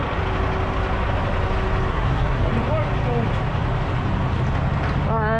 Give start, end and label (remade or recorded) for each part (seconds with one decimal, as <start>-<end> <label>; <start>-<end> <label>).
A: 0.0-1.9 recorded; 1.9-2.5 remade; 2.5-5.4 recorded